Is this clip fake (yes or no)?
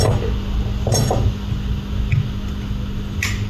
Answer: no